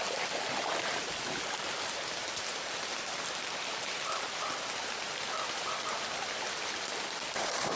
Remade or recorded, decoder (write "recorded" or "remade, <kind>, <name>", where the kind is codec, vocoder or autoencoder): recorded